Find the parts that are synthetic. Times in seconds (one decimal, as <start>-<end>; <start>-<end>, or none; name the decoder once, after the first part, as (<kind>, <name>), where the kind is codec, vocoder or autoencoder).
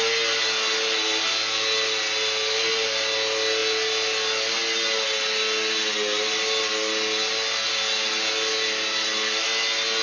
none